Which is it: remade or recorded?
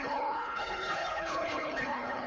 remade